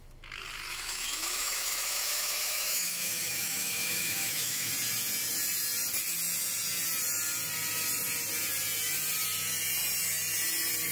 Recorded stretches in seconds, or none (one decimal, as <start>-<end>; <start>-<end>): 0.0-0.7; 4.7-10.9